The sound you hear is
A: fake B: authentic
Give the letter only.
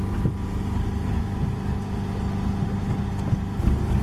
B